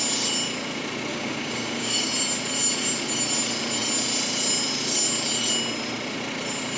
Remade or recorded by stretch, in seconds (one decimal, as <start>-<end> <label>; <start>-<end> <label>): 0.0-1.1 recorded; 1.1-2.1 remade; 2.1-6.8 recorded